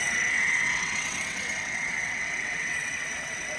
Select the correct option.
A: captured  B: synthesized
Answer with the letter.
B